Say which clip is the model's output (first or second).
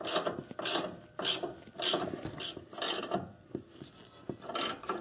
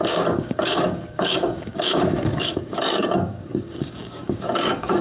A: second